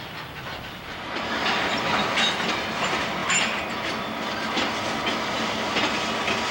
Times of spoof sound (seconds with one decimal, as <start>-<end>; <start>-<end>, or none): none